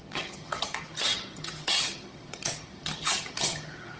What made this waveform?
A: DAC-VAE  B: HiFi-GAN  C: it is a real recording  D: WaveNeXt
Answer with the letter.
B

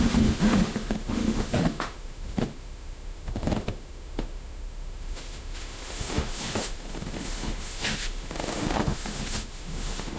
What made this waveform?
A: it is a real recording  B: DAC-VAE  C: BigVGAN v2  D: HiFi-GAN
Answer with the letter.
B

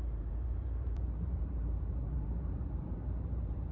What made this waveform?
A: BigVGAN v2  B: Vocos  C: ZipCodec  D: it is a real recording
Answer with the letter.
A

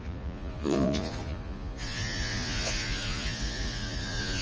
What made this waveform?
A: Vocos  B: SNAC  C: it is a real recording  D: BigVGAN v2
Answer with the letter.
A